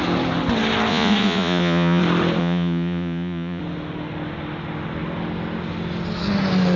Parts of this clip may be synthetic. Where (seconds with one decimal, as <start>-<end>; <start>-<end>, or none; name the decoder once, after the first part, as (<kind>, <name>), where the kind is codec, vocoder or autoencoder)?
0.9-2.0 (vocoder, Vocos); 2.4-3.6